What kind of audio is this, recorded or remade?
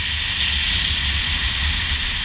recorded